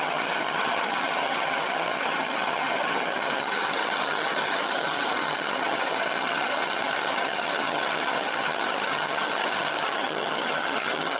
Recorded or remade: remade